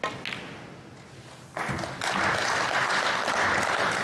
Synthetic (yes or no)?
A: no